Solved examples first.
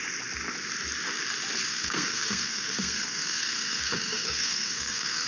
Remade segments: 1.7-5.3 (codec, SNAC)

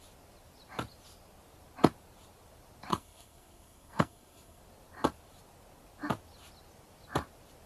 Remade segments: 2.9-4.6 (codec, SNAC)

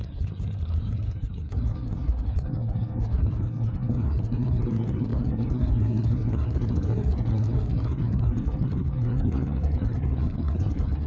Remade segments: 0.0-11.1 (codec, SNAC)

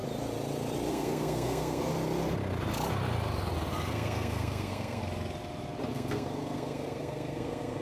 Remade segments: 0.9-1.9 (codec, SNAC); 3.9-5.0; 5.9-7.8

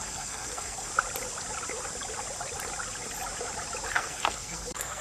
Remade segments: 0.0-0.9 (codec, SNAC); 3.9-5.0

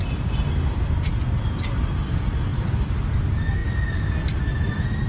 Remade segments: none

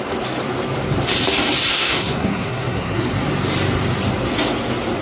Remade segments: 1.7-3.1 (codec, SNAC)

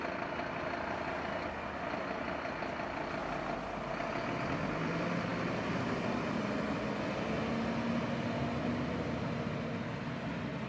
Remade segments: none